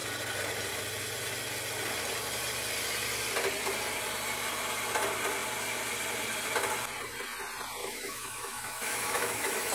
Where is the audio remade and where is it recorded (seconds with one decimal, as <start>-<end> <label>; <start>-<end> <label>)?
0.0-7.8 recorded; 7.8-9.7 remade